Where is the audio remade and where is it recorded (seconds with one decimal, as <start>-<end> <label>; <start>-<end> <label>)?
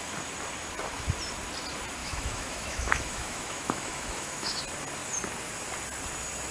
0.0-2.0 recorded; 2.0-4.6 remade; 4.6-6.5 recorded